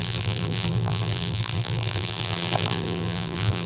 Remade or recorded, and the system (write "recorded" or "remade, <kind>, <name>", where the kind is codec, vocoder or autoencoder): remade, vocoder, BigVGAN v2